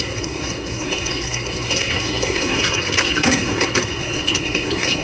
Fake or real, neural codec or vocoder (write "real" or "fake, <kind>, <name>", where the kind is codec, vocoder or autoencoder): fake, codec, SNAC